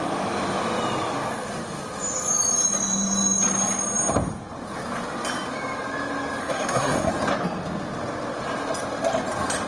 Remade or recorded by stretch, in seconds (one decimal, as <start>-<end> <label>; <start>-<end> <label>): 0.0-6.4 recorded; 6.4-7.1 remade; 7.1-9.7 recorded